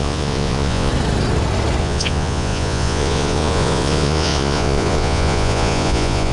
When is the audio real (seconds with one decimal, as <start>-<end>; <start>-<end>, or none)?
0.9-1.8